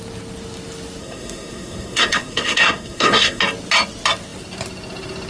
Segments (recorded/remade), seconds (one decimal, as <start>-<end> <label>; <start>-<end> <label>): 0.0-1.0 recorded; 1.0-3.4 remade; 3.4-5.3 recorded